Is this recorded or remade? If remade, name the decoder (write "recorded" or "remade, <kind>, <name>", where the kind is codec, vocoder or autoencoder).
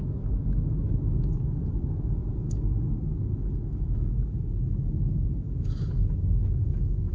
remade, autoencoder, DAC-VAE